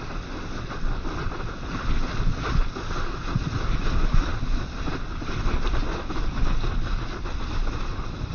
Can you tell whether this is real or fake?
real